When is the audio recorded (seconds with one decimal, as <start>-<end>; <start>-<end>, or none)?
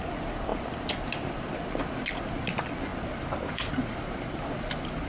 none